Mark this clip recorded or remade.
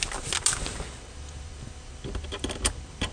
recorded